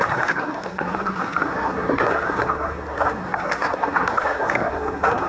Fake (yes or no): yes